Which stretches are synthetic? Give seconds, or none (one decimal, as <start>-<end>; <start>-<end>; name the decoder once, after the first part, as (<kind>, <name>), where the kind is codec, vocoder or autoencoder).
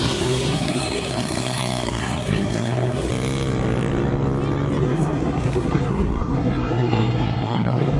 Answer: 0.0-3.1 (codec, SNAC); 4.8-8.0